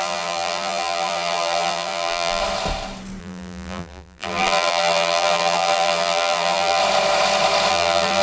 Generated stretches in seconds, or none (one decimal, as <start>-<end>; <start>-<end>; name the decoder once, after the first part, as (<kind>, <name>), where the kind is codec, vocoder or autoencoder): 0.0-2.4 (vocoder, BigVGAN v2); 3.2-6.8; 7.7-8.2